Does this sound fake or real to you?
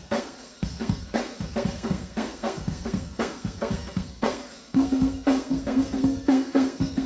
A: fake